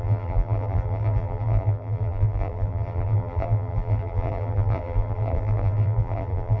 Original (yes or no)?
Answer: no